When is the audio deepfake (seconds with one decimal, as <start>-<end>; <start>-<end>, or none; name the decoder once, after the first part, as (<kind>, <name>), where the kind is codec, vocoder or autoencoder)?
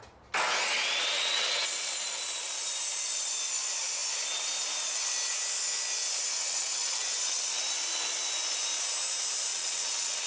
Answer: 1.0-1.7 (vocoder, WaveNeXt); 6.4-7.6; 9.5-10.3